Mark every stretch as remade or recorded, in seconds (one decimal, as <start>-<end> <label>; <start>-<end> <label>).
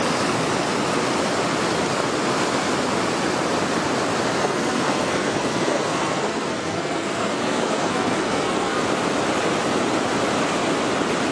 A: 0.0-4.4 recorded; 4.4-8.8 remade; 8.8-11.3 recorded